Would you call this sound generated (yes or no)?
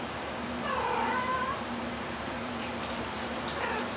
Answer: yes